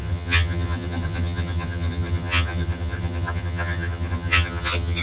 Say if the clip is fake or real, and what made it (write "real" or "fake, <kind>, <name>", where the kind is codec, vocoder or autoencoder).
fake, vocoder, HiFi-GAN